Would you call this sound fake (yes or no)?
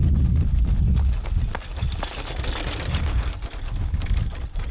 no